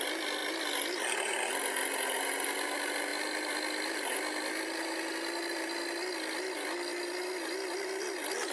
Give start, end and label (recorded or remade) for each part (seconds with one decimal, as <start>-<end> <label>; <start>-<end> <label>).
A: 0.0-8.5 recorded